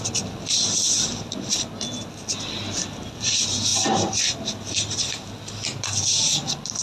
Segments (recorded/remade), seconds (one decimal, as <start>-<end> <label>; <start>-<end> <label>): 0.0-0.8 recorded; 0.8-1.8 remade; 1.8-3.7 recorded; 3.7-5.1 remade; 5.1-6.8 recorded